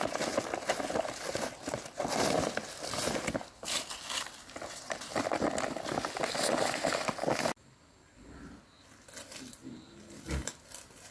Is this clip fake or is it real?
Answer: real